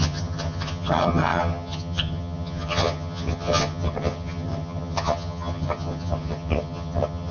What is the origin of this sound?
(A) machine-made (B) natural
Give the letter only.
A